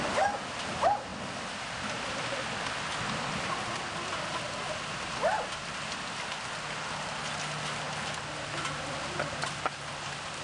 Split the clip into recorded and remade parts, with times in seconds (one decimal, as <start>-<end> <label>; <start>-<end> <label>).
0.0-10.4 recorded